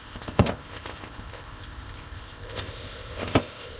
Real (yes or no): no